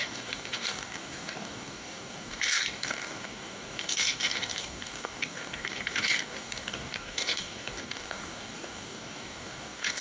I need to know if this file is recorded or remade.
remade